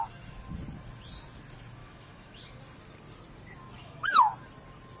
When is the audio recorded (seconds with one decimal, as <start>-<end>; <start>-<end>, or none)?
0.0-1.8; 2.4-3.8; 4.3-5.0